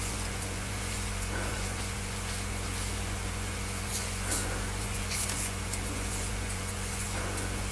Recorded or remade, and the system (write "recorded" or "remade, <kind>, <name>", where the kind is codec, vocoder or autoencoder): remade, vocoder, Vocos